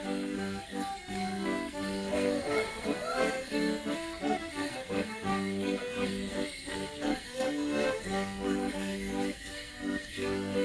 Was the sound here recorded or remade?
remade